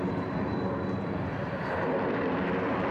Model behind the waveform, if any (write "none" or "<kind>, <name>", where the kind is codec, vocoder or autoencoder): vocoder, BigVGAN v2